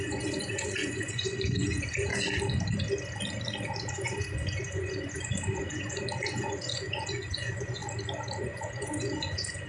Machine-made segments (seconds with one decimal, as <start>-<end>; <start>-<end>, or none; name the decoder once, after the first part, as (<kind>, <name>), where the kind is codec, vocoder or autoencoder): 0.0-2.1 (vocoder, Vocos); 3.9-7.8; 8.4-9.7